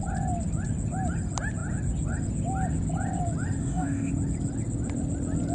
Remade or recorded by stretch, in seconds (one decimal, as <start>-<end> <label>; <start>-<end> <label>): 0.0-3.6 recorded; 3.6-4.1 remade; 4.1-5.5 recorded